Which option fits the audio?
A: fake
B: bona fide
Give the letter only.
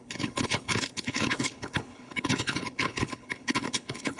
A